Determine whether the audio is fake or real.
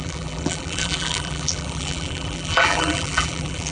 fake